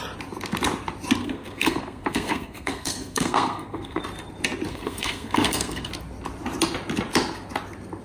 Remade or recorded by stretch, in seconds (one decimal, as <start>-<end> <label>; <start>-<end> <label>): 0.0-1.2 recorded; 1.2-4.0 remade; 4.0-4.7 recorded; 4.7-5.9 remade; 5.9-8.0 recorded